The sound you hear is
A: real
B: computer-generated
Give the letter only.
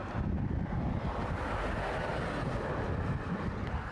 A